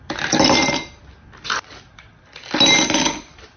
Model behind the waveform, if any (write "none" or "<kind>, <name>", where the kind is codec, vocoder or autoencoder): none